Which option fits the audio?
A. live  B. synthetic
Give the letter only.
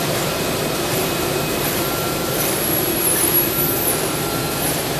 B